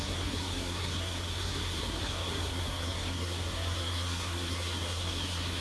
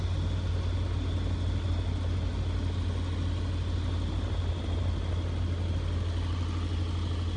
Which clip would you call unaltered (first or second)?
second